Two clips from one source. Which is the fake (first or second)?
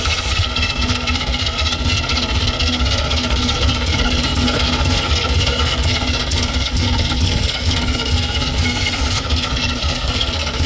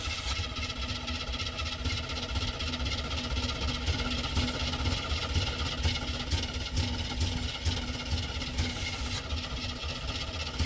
first